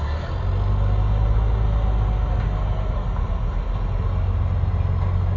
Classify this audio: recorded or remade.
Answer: recorded